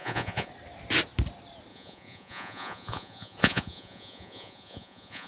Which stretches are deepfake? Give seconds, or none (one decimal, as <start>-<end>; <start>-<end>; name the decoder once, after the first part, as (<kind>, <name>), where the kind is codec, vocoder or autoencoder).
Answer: 0.0-0.5 (vocoder, Vocos); 1.7-5.3